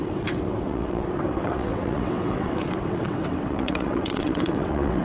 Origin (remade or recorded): remade